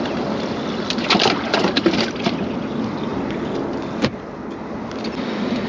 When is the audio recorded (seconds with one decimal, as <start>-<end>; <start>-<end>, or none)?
0.0-5.7